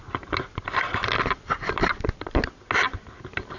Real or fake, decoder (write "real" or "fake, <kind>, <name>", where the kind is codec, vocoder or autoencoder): real